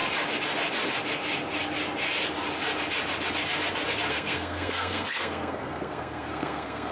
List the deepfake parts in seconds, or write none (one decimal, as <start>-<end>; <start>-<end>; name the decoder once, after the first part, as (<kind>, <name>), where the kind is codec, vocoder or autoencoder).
4.1-6.9 (codec, SNAC)